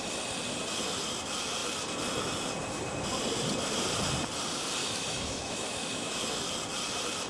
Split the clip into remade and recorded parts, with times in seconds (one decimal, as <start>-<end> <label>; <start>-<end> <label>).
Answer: 0.0-4.8 recorded; 4.8-6.1 remade; 6.1-7.3 recorded